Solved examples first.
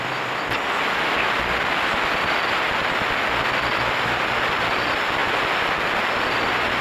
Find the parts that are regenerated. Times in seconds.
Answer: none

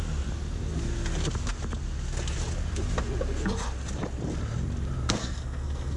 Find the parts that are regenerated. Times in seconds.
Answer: 5.2-6.0 (codec, SNAC)

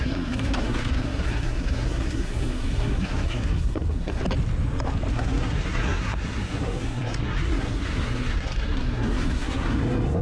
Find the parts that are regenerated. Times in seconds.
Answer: 0.0-4.2 (codec, SNAC); 5.1-10.2